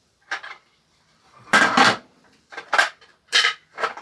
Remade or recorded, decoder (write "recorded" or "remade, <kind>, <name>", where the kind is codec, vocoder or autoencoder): remade, vocoder, BigVGAN v2